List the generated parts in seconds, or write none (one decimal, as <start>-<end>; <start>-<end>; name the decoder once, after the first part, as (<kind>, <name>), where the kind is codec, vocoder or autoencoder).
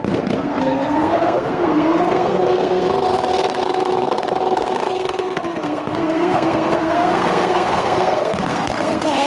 0.0-9.3 (codec, SNAC)